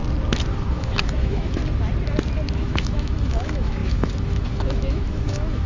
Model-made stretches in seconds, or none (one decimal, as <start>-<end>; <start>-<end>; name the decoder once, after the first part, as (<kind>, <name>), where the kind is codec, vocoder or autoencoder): 0.7-1.6 (autoencoder, DAC-VAE); 2.5-5.7